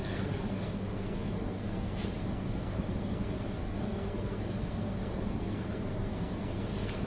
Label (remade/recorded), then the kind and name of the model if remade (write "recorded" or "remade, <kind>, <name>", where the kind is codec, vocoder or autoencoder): remade, codec, SNAC